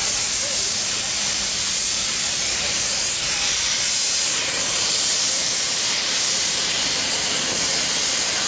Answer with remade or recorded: remade